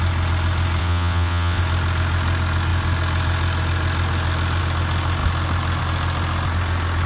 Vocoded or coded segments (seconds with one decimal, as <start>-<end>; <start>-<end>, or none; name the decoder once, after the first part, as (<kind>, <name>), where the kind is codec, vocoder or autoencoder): 0.8-1.6 (vocoder, WaveNeXt)